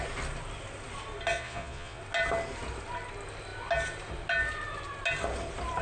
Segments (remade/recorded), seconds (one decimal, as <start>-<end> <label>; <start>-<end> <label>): 0.0-1.3 recorded; 1.3-2.0 remade; 2.0-5.8 recorded